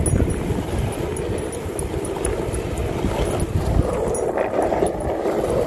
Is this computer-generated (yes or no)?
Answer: no